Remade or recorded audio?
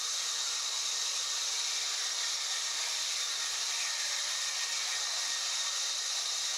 remade